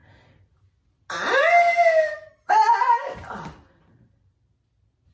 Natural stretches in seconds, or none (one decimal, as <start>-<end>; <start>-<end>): 0.0-5.1